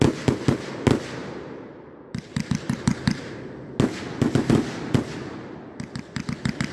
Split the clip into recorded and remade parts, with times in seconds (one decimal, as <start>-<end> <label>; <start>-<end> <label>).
0.0-1.2 recorded; 1.2-3.5 remade; 3.5-6.7 recorded